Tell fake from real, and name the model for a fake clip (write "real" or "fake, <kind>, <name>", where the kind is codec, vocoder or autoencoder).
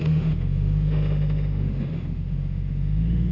fake, autoencoder, DAC-VAE